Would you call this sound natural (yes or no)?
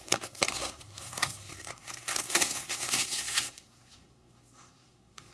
no